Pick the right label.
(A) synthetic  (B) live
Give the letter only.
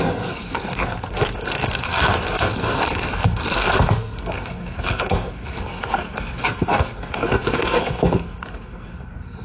A